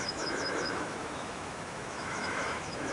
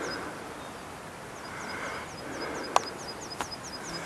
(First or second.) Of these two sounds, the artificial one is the first